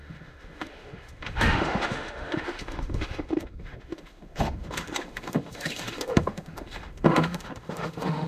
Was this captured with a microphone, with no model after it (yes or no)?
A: no